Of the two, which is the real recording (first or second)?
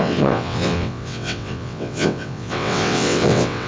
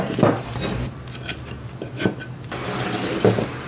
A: second